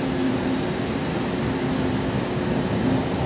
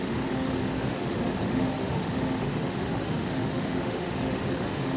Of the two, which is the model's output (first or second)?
second